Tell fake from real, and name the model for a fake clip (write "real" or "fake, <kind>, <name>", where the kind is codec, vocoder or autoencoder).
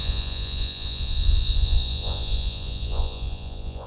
fake, vocoder, Vocos